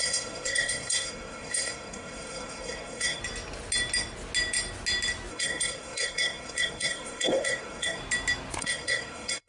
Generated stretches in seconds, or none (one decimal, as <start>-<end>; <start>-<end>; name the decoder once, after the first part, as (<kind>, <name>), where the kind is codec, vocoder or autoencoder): 0.0-3.2 (codec, SNAC); 5.3-8.0; 8.6-9.5